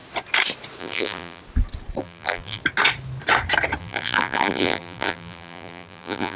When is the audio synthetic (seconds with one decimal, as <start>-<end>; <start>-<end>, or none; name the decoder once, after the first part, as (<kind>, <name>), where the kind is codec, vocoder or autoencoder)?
0.8-1.4 (vocoder, BigVGAN v2); 2.0-2.6; 3.8-6.4